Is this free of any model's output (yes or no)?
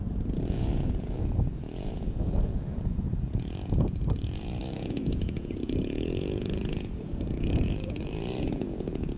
no